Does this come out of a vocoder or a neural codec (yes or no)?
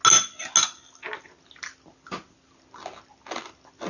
no